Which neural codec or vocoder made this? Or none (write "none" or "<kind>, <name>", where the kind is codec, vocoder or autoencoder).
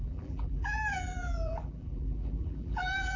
vocoder, BigVGAN v2